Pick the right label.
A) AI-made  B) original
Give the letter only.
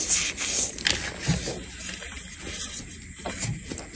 B